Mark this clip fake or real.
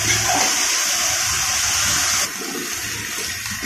real